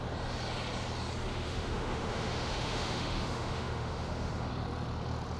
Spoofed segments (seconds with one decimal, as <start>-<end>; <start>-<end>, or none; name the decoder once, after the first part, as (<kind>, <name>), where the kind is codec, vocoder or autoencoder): 1.3-4.5 (autoencoder, DAC-VAE)